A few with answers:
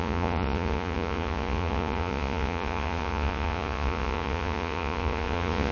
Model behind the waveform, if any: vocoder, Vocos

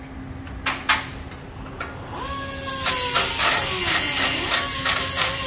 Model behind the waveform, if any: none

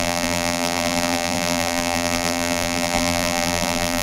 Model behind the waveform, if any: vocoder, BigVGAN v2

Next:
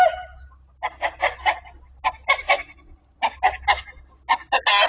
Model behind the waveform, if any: none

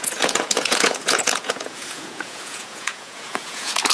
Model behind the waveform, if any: vocoder, Vocos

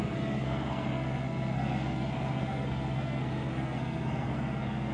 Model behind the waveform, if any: codec, SNAC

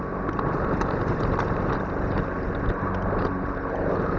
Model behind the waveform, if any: vocoder, BigVGAN v2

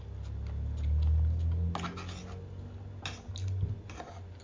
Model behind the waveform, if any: none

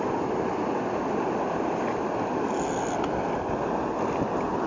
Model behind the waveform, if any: none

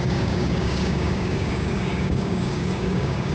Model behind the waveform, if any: codec, DAC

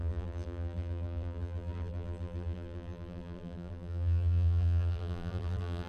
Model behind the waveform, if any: vocoder, BigVGAN v2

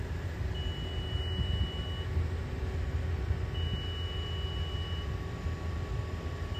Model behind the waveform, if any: none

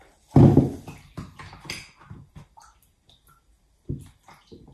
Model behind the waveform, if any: none